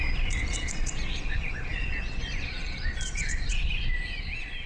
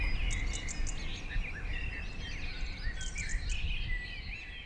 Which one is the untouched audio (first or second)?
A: second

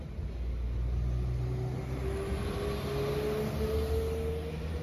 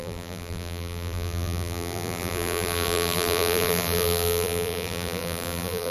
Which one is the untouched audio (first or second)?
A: first